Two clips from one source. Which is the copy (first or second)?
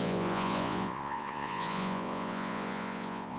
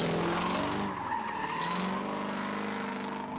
first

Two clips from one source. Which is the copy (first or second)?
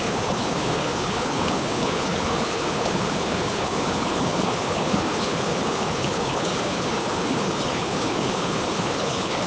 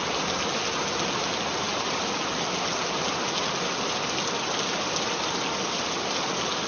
first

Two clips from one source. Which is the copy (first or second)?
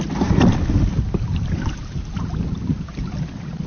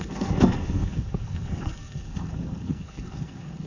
second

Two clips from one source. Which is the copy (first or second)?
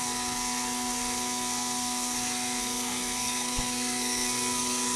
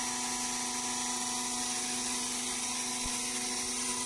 first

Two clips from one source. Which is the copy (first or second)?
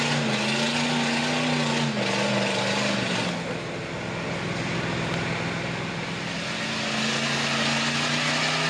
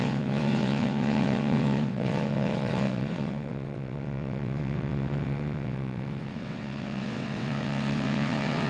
second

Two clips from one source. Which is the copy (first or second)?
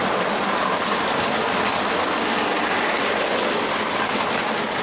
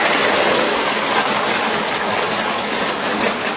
second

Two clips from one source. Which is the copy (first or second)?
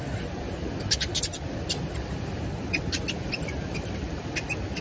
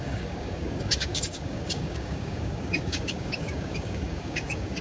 second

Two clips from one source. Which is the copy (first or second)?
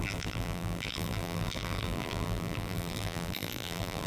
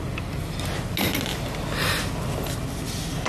first